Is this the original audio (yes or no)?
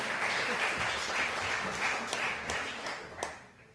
yes